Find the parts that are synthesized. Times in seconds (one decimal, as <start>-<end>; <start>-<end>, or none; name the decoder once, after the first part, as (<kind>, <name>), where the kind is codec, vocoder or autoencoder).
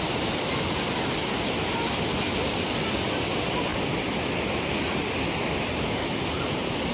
none